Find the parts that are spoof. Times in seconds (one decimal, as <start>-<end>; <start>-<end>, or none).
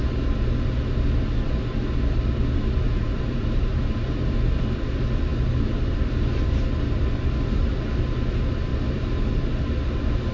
2.9-4.5